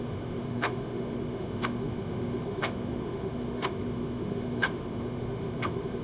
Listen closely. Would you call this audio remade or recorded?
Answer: remade